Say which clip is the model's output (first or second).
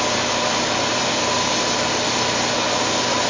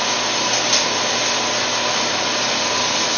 first